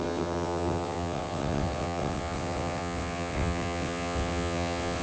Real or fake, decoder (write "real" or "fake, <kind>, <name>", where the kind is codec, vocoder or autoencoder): fake, vocoder, WaveNeXt